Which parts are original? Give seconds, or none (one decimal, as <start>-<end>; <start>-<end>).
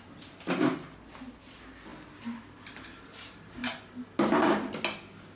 0.0-5.4